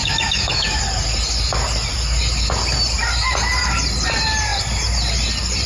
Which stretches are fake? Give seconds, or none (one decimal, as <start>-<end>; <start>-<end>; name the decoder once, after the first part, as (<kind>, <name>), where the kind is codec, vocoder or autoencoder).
0.0-0.8 (autoencoder, DAC-VAE)